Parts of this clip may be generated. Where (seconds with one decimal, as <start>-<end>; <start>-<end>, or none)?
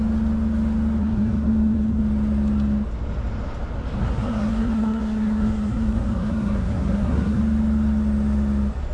1.0-2.0; 4.0-7.4